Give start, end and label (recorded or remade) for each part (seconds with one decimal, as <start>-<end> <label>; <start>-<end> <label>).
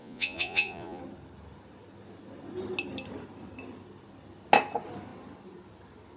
0.0-1.0 remade; 1.0-6.2 recorded